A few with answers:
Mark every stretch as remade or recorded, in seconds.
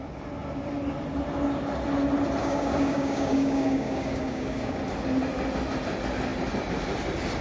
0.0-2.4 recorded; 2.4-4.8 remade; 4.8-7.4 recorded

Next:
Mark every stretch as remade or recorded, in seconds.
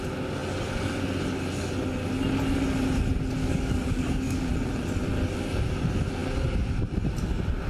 0.0-3.4 recorded; 3.4-4.5 remade; 4.5-7.7 recorded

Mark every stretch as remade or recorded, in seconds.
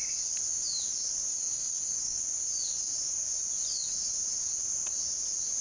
0.0-1.3 recorded; 1.3-2.2 remade; 2.2-5.6 recorded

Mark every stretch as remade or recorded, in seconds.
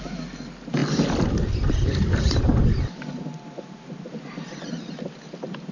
0.0-5.7 recorded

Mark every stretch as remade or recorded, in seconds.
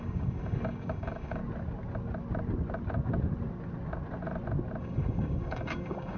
0.0-1.4 remade; 1.4-4.8 recorded; 4.8-6.2 remade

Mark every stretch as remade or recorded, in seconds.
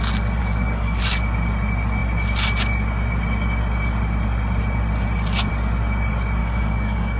0.0-0.4 recorded; 0.4-1.0 remade; 1.0-6.4 recorded; 6.4-7.2 remade